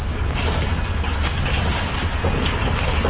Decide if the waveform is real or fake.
real